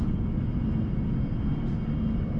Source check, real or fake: real